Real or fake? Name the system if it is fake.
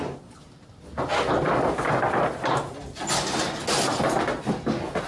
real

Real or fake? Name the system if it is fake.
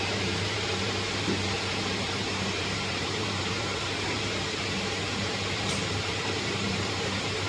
fake, vocoder, BigVGAN v2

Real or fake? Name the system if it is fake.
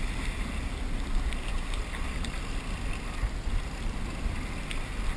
real